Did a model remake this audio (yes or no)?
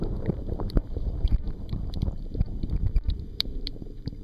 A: yes